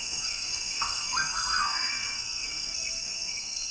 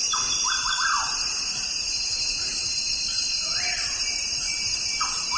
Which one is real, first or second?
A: second